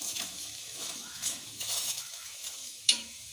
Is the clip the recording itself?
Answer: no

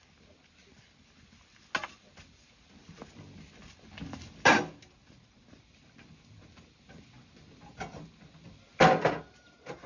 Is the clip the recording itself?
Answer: yes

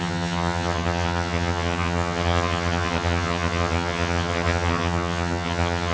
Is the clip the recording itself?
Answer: no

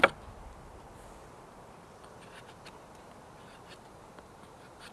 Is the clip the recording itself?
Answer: yes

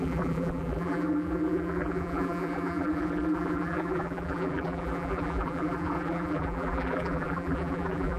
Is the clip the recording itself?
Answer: no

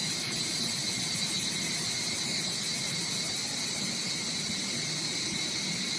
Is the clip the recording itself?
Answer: yes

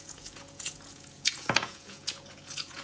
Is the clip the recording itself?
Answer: no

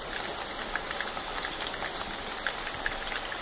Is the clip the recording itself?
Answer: yes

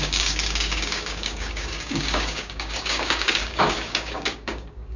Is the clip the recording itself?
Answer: no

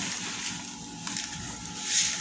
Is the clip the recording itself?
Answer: yes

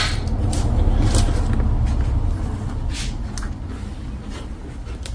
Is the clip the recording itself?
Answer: yes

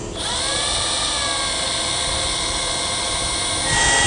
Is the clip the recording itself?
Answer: yes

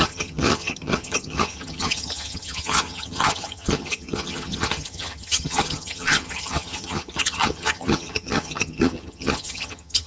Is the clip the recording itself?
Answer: no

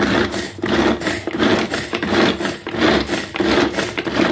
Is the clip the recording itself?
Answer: yes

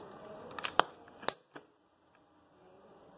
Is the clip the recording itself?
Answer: yes